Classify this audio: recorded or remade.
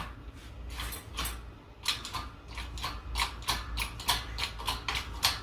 recorded